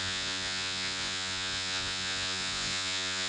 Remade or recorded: remade